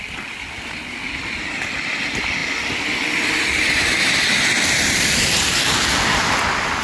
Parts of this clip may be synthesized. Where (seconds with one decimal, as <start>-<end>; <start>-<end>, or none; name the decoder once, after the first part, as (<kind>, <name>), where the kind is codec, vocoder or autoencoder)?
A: none